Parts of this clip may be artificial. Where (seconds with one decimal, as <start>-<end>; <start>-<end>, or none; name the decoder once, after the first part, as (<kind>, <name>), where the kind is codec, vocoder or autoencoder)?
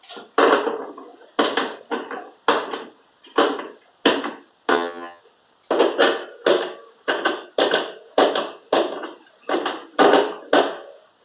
4.7-5.2 (vocoder, HiFi-GAN)